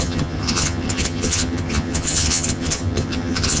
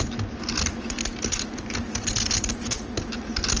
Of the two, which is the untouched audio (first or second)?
second